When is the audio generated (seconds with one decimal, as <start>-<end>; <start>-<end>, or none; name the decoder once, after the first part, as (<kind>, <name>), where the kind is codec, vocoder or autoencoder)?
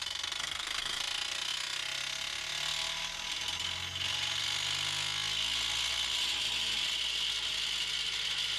0.4-1.0 (codec, SNAC)